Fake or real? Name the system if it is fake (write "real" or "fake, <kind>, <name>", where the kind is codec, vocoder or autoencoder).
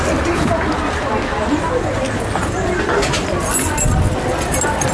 real